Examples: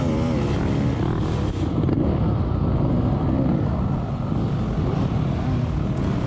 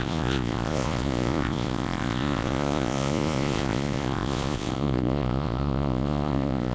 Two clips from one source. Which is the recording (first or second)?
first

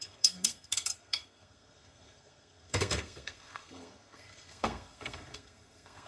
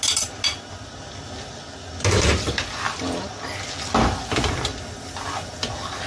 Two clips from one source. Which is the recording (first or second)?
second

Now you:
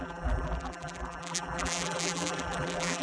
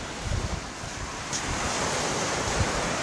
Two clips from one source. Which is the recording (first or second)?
second